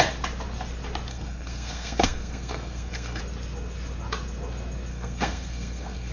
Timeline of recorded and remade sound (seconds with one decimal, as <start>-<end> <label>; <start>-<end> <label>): 0.0-1.1 recorded; 1.1-3.2 remade; 3.2-4.9 recorded; 4.9-6.1 remade